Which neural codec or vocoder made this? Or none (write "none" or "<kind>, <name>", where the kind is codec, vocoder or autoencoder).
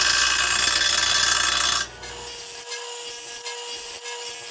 none